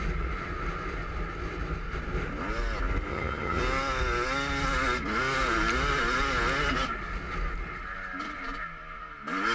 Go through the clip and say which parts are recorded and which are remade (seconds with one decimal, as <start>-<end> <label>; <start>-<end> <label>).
0.0-3.1 recorded; 3.1-3.6 remade; 3.6-9.5 recorded